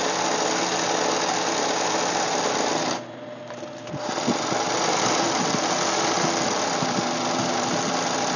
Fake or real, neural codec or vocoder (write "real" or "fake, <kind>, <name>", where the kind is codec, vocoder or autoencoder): real